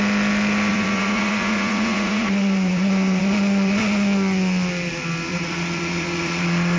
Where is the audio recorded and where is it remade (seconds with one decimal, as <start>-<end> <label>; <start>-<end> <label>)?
0.0-0.7 recorded; 0.7-3.2 remade; 3.2-5.3 recorded; 5.3-6.8 remade